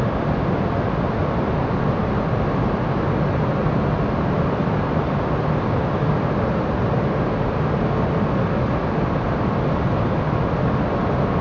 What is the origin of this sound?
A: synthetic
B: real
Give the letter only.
B